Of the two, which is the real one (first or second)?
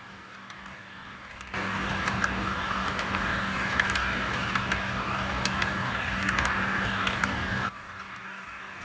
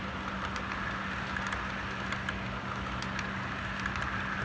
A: second